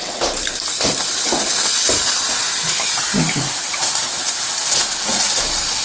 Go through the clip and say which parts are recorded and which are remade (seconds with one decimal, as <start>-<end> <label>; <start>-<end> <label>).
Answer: 0.0-5.8 recorded